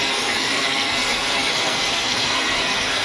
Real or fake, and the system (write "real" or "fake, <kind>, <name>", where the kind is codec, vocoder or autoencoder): fake, codec, SNAC